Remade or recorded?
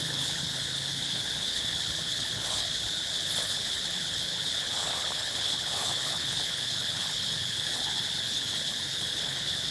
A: remade